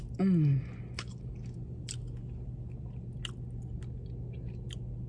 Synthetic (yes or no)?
no